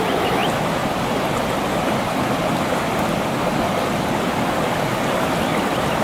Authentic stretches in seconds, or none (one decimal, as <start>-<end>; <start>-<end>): 0.0-6.0